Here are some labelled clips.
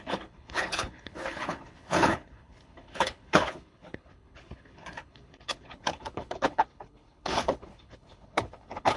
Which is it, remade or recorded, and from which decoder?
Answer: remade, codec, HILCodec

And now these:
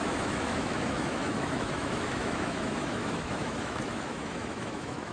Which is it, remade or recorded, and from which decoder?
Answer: remade, autoencoder, DAC-VAE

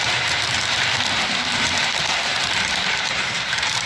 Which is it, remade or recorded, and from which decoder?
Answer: remade, vocoder, BigVGAN v2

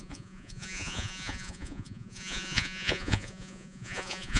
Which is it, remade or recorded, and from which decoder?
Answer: remade, vocoder, Vocos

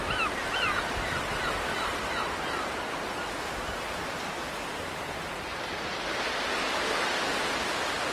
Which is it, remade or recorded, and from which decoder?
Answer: recorded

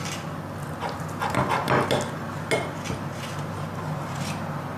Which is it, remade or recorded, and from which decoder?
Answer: recorded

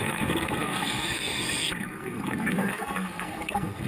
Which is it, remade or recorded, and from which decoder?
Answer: remade, codec, SNAC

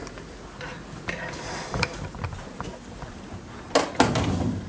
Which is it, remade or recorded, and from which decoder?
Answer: recorded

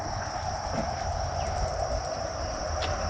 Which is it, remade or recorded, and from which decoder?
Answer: recorded